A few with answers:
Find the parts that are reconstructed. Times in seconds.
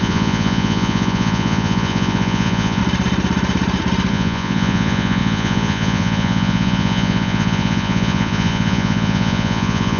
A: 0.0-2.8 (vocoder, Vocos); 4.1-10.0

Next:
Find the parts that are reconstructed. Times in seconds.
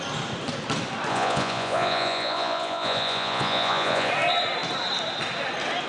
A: 1.1-4.1 (vocoder, Vocos)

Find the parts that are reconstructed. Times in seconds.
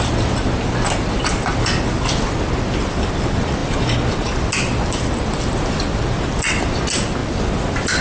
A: none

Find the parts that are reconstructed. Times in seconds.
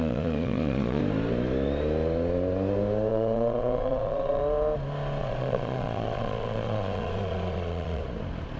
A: 0.0-1.0 (vocoder, Vocos); 3.1-4.4; 5.2-8.0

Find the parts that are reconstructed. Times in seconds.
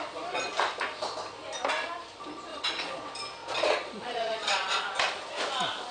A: 2.5-3.0 (vocoder, Vocos); 3.4-4.8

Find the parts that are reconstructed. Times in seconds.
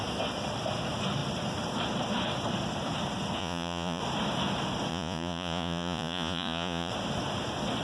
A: 3.4-4.0 (vocoder, Vocos); 4.9-6.9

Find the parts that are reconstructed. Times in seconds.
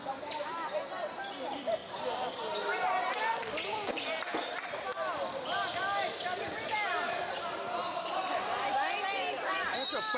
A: none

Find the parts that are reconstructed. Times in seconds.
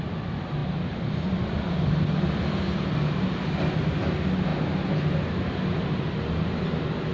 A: none